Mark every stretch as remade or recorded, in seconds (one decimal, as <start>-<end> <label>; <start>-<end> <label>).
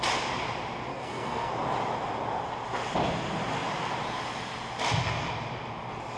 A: 0.0-0.9 recorded; 0.9-1.5 remade; 1.5-6.2 recorded